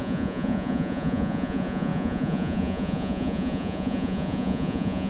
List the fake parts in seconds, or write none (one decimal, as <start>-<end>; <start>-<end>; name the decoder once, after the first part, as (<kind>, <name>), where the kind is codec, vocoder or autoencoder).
0.0-5.1 (vocoder, Vocos)